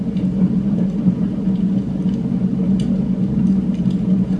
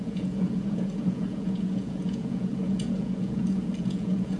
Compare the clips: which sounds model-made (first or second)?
second